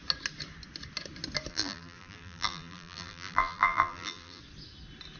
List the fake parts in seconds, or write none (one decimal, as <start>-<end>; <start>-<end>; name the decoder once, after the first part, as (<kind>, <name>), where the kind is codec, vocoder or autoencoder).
1.5-4.4 (vocoder, BigVGAN v2)